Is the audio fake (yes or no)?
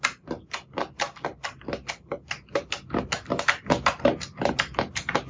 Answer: no